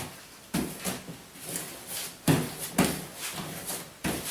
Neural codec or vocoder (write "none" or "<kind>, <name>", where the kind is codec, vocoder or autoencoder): none